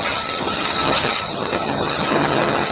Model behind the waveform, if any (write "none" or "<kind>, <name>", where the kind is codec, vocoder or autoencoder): vocoder, HiFi-GAN